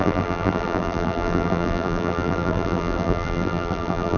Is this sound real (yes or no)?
no